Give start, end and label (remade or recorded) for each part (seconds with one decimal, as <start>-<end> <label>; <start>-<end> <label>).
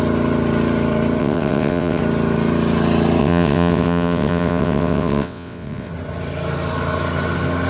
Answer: 0.0-1.2 recorded; 1.2-2.0 remade; 2.0-3.2 recorded; 3.2-5.9 remade; 5.9-7.7 recorded